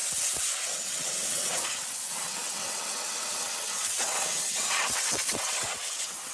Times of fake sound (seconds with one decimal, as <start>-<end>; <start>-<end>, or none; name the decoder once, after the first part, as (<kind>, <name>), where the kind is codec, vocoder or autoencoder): 0.0-6.3 (vocoder, WaveNeXt)